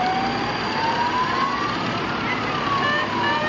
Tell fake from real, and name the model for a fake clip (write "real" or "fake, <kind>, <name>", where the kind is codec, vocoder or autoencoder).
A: real